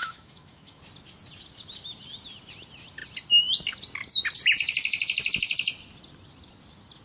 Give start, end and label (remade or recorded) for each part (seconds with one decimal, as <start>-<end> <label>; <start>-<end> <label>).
0.0-0.8 remade; 0.8-7.0 recorded